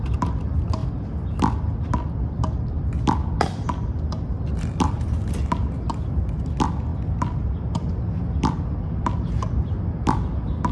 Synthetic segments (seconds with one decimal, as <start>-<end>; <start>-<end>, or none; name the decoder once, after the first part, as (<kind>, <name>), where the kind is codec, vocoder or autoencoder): none